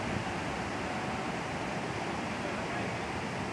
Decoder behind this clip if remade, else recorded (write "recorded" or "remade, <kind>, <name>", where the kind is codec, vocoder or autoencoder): recorded